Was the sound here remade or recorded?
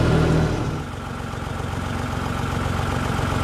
recorded